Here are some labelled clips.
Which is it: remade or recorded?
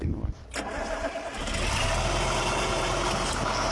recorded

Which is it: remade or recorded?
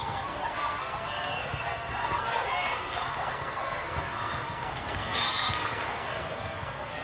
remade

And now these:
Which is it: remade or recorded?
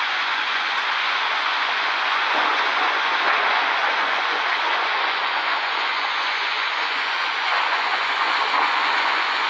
remade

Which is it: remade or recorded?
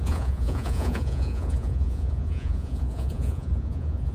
remade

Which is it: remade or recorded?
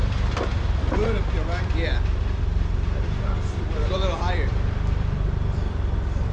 remade